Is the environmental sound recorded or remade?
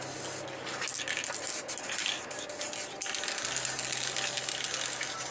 recorded